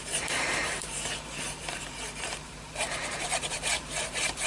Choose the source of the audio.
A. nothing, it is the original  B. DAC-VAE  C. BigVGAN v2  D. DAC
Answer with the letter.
C